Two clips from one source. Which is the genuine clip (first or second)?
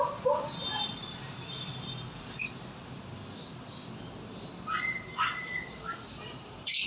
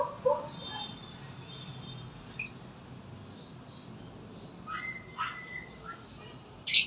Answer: second